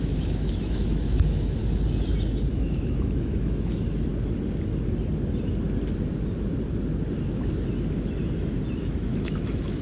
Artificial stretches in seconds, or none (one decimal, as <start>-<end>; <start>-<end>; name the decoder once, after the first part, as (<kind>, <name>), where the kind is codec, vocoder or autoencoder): 0.0-1.6 (autoencoder, DAC-VAE); 2.5-4.1; 8.8-9.8

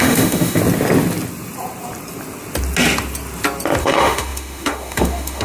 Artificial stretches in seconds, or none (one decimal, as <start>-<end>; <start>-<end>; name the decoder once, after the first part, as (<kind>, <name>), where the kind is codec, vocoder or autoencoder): 0.0-0.6 (autoencoder, DAC-VAE); 3.8-5.4

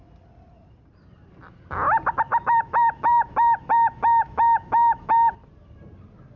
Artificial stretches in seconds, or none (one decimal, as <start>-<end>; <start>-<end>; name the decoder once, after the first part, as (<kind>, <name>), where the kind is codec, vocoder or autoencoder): 2.3-5.3 (autoencoder, DAC-VAE)

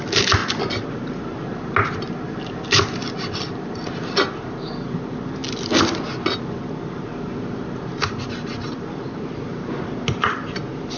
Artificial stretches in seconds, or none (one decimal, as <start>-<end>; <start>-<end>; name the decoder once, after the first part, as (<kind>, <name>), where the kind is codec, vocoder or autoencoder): none